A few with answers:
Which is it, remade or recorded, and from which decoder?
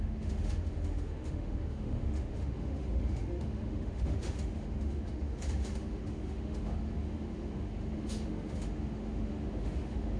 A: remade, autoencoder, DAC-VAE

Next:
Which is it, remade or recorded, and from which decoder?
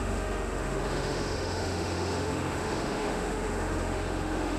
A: remade, autoencoder, DAC-VAE